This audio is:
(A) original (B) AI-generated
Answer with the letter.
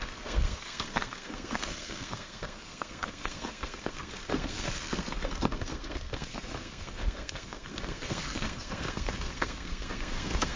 B